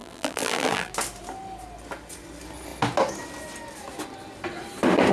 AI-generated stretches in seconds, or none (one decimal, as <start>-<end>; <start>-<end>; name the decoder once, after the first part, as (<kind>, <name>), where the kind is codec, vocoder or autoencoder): 0.0-0.9 (vocoder, BigVGAN v2)